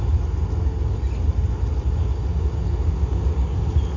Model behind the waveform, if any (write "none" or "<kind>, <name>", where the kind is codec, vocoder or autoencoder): none